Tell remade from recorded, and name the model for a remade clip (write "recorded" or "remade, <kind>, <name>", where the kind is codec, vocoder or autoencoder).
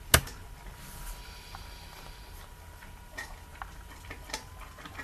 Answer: recorded